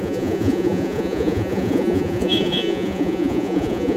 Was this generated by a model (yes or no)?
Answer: yes